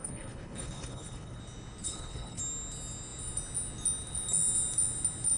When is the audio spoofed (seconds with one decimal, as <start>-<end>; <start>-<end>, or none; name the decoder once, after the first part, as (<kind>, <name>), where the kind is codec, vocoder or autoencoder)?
0.0-1.4 (codec, HILCodec); 1.8-2.4